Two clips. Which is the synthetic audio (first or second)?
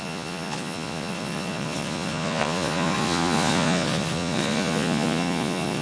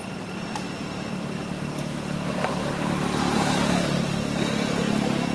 first